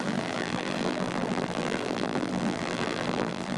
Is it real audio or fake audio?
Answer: fake